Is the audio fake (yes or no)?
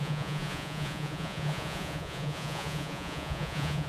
yes